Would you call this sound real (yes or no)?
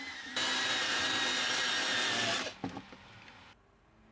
yes